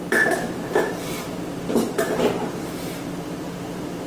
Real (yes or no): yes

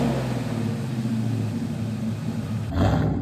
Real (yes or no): yes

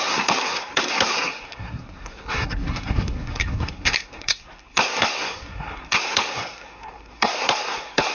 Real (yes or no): no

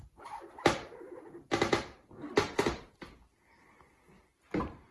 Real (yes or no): yes